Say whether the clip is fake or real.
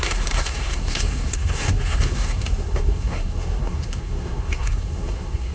fake